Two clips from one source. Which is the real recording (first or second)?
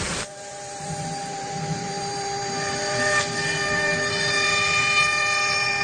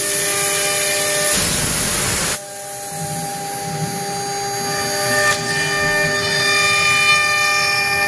second